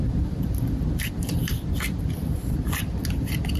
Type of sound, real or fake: real